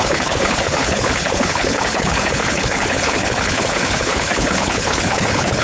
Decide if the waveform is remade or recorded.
remade